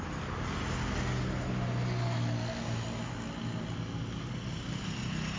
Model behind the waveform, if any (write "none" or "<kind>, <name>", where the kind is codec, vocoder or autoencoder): none